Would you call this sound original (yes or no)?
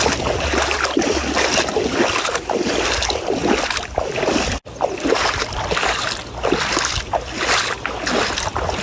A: yes